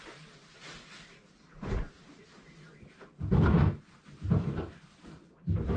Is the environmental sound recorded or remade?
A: remade